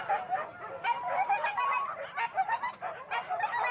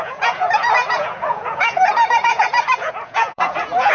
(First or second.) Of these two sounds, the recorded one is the first